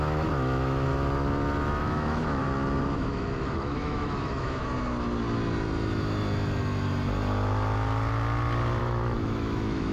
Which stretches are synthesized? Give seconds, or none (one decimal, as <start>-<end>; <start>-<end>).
0.0-0.9; 1.8-2.4; 2.9-4.6; 8.8-9.9